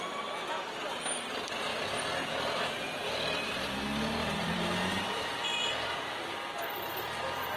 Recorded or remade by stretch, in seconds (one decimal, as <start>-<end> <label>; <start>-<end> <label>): 0.0-4.2 recorded; 4.2-5.0 remade; 5.0-7.6 recorded